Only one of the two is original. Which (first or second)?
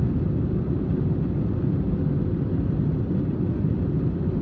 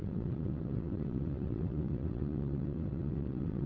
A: first